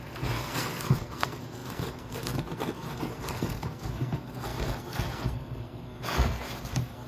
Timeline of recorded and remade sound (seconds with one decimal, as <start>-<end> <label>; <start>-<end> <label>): 0.0-7.1 remade